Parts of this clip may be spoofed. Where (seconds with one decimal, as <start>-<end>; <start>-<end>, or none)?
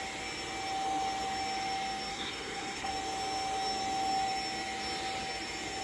2.1-2.9